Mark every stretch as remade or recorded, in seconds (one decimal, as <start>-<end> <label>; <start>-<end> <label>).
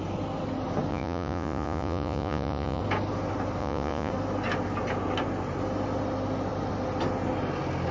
0.0-0.9 recorded; 0.9-2.8 remade; 2.8-3.6 recorded; 3.6-4.1 remade; 4.1-7.9 recorded